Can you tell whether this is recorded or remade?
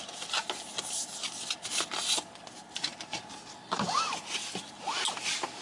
recorded